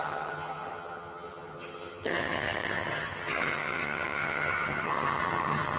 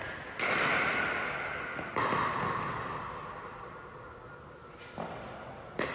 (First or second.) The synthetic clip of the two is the first